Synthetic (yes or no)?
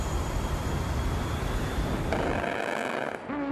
no